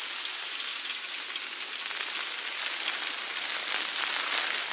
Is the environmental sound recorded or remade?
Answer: recorded